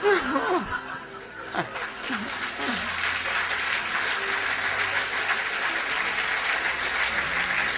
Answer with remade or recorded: recorded